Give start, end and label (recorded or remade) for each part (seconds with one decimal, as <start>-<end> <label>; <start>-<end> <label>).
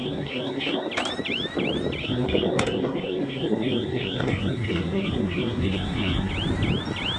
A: 0.0-0.9 remade; 0.9-2.0 recorded; 2.0-6.3 remade; 6.3-7.2 recorded